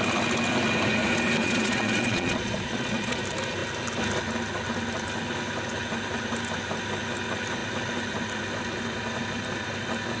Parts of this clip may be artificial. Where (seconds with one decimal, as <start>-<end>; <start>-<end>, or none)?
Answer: 1.4-3.2